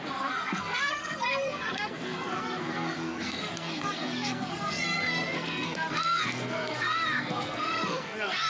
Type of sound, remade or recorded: remade